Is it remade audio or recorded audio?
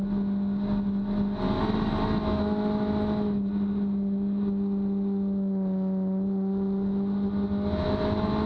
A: recorded